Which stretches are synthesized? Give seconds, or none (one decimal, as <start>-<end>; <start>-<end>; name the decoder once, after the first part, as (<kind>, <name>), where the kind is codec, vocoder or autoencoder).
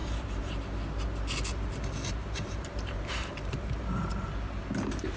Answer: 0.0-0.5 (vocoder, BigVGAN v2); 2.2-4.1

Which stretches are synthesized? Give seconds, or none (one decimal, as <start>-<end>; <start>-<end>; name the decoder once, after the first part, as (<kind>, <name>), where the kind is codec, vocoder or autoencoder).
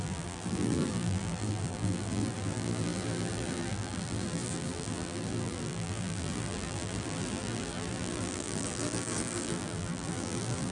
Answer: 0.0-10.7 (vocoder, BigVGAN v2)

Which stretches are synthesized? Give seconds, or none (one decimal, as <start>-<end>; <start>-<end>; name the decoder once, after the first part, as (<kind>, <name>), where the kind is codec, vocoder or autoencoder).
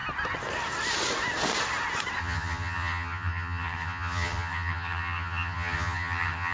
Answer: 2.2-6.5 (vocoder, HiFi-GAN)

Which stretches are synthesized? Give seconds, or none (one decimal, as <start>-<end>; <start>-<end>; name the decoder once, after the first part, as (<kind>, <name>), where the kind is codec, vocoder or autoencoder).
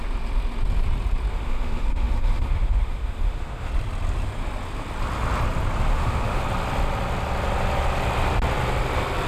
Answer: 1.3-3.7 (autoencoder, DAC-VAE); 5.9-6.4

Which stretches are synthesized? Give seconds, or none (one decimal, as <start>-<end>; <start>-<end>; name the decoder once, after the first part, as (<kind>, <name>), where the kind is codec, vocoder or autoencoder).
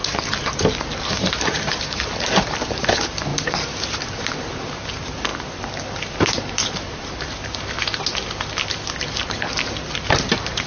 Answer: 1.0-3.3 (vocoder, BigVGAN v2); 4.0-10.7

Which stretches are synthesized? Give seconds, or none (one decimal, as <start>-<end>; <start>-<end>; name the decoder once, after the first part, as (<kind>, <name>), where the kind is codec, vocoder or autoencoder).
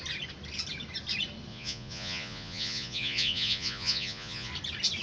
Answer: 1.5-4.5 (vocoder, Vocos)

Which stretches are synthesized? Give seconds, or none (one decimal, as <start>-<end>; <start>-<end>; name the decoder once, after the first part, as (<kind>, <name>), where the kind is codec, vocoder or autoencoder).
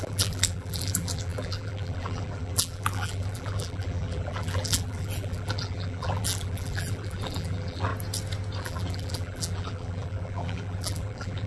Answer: 0.0-7.9 (vocoder, BigVGAN v2); 8.6-11.5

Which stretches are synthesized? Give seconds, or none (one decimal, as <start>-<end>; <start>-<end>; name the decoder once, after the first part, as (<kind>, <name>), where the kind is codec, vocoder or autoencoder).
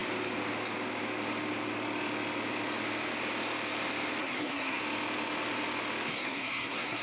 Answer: 4.2-4.8 (codec, SNAC); 6.1-7.0